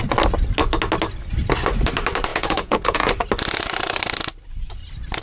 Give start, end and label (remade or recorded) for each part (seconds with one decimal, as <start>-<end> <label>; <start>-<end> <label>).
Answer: 0.0-2.3 recorded; 2.3-3.1 remade; 3.1-5.2 recorded